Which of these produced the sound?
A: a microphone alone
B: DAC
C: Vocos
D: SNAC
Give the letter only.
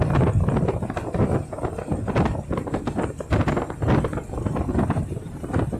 A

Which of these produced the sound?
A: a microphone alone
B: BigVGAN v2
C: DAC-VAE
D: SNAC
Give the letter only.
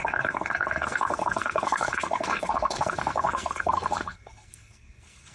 D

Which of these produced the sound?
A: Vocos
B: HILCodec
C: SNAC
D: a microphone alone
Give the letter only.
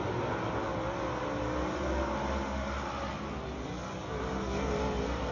D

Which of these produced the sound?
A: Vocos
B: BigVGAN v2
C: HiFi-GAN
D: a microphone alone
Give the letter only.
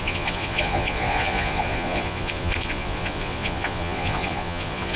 A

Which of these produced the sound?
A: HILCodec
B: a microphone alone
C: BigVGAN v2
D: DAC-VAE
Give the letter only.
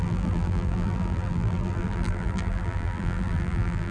C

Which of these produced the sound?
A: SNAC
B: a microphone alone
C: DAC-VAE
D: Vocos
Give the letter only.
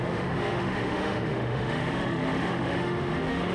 C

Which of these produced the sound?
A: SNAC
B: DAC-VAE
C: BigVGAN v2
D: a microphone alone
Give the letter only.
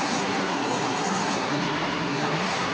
A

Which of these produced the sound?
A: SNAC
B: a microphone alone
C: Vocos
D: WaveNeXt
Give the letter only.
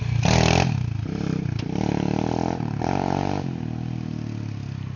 B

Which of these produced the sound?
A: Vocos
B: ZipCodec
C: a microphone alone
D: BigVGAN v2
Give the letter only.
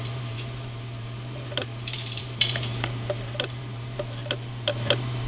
D